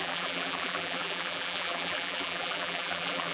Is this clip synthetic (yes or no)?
yes